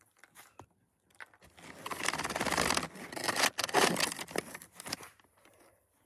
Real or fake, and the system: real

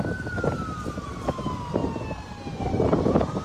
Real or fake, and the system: real